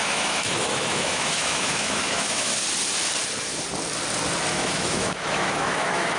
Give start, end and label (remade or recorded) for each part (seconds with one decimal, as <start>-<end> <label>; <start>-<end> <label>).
0.0-2.6 remade; 2.6-4.5 recorded; 4.5-6.2 remade